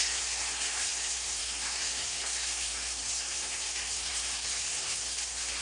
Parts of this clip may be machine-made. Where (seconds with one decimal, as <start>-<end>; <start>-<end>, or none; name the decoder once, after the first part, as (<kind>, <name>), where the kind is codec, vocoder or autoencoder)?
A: 0.0-5.6 (codec, SNAC)